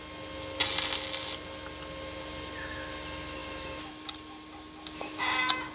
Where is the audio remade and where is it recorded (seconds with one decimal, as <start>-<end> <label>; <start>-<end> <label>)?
0.0-5.7 recorded